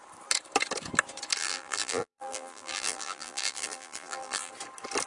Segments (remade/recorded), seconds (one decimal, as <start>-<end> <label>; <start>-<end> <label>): 0.0-1.4 recorded; 1.4-4.5 remade; 4.5-5.1 recorded